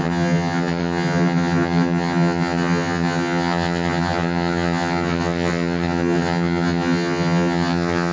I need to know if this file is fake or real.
fake